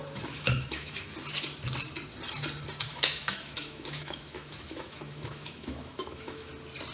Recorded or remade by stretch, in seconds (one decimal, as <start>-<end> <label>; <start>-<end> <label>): 0.0-1.1 remade; 1.1-2.9 recorded; 2.9-6.5 remade; 6.5-6.9 recorded